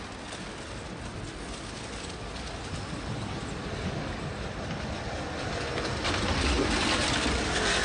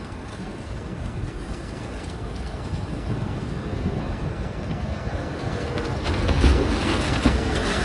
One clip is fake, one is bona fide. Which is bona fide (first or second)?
first